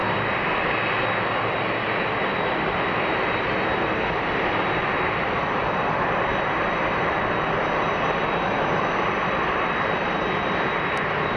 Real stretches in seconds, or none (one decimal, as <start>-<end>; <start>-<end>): 0.0-11.4